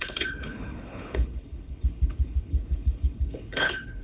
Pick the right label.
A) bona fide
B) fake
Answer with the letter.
B